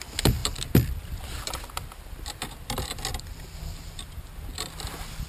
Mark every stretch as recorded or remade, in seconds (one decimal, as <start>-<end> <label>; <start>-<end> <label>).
0.0-5.3 recorded